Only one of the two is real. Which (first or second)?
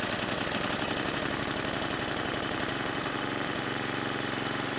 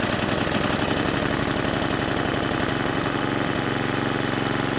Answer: second